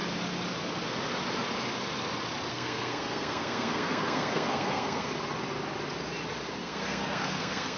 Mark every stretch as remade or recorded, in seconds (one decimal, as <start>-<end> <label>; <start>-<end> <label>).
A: 0.0-2.5 recorded; 2.5-5.1 remade; 5.1-6.6 recorded; 6.6-7.8 remade